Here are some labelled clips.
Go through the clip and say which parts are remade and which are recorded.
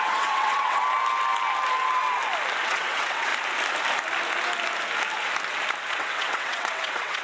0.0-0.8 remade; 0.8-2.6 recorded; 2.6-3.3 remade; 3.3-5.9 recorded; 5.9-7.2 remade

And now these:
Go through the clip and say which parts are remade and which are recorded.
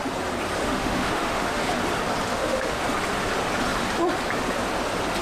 0.0-0.6 recorded; 0.6-1.7 remade; 1.7-2.3 recorded; 2.3-2.8 remade; 2.8-5.2 recorded